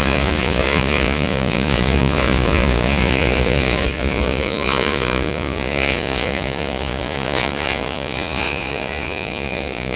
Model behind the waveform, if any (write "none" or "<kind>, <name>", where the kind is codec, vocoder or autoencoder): vocoder, Vocos